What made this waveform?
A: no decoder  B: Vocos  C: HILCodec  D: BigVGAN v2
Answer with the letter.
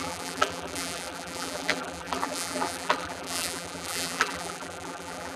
D